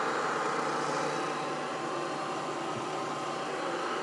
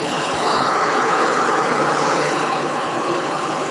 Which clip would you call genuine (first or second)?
first